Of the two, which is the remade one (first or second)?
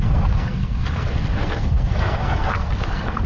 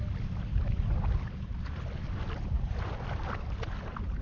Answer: first